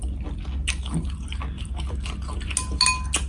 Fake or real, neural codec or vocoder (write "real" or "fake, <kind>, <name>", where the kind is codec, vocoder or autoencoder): real